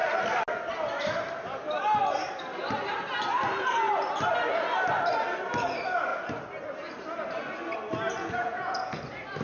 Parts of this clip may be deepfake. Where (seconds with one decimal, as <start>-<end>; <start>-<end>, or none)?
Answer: 8.2-9.0